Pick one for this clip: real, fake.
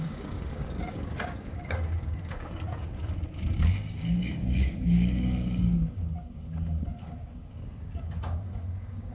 fake